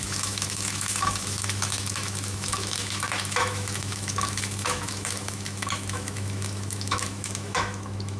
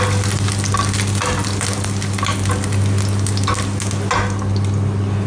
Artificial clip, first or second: first